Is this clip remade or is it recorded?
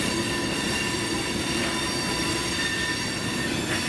recorded